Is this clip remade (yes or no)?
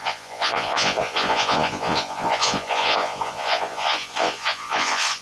yes